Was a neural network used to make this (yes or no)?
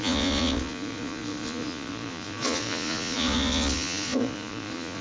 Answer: yes